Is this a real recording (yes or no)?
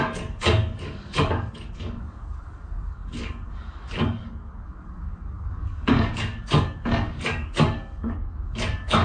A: no